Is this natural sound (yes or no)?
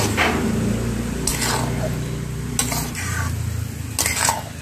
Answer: yes